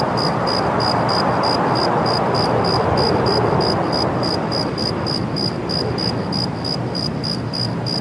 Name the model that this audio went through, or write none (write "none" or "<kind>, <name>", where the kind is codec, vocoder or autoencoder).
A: none